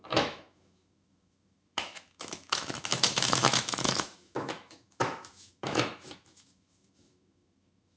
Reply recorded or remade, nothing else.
remade